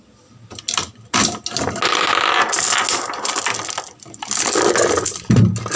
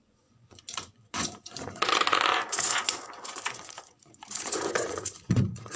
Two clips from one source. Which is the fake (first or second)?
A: second